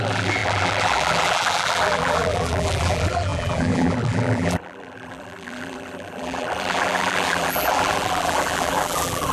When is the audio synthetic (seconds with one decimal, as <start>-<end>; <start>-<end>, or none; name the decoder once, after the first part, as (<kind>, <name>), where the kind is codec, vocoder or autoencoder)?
0.0-9.3 (vocoder, BigVGAN v2)